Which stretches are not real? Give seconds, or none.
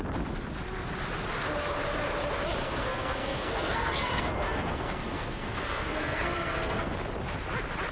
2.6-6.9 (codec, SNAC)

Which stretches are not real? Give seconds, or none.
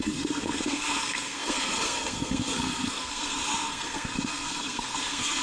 0.0-5.4 (codec, SNAC)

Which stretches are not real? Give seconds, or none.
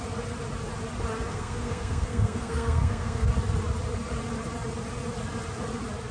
1.3-3.3 (codec, SNAC)